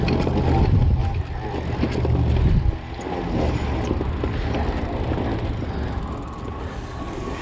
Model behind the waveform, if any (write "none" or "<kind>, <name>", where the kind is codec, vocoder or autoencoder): none